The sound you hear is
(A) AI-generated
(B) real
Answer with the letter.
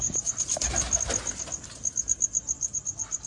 B